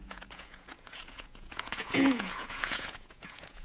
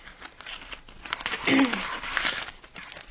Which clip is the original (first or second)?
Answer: second